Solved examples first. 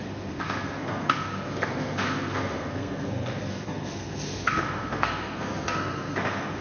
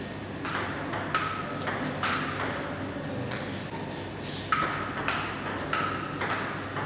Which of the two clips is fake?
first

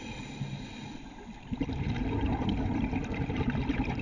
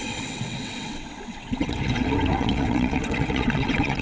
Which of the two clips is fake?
second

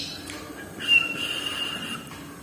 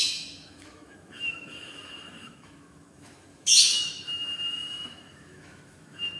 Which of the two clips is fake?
second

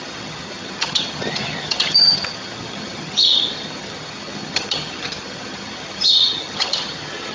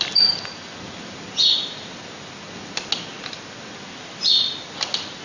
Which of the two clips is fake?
first